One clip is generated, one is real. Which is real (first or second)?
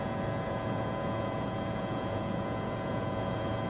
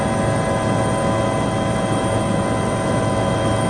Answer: second